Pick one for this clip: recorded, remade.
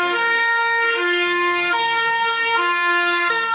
remade